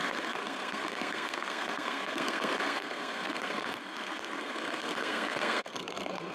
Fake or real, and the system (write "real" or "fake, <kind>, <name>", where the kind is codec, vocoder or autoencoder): fake, codec, SNAC